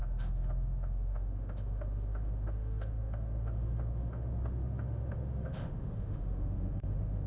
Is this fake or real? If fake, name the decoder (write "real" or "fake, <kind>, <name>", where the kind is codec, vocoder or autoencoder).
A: fake, autoencoder, DAC-VAE